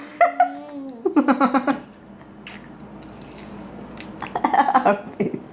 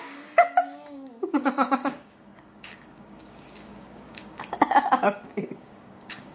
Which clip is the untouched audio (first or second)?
first